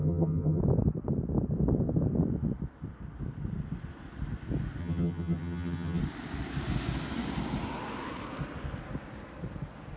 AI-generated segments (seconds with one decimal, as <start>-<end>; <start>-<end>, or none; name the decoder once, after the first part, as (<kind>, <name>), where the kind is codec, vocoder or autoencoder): 0.0-0.6 (vocoder, HiFi-GAN); 4.8-6.0